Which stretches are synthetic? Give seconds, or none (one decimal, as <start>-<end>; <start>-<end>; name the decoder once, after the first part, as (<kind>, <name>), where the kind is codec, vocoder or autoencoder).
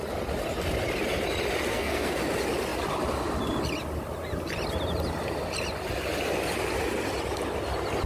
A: 1.7-2.2 (codec, SNAC)